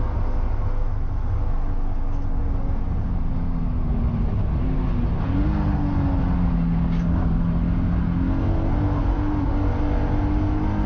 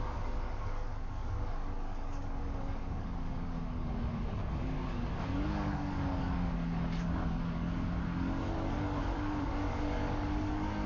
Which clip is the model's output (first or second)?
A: second